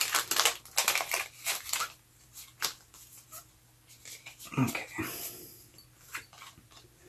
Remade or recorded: recorded